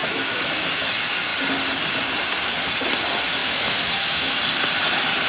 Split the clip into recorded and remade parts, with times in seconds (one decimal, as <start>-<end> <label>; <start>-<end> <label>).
0.0-0.9 remade; 0.9-3.4 recorded; 3.4-4.4 remade; 4.4-5.3 recorded